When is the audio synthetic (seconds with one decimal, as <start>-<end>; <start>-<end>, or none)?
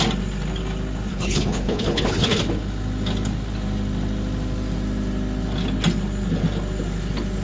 1.1-2.4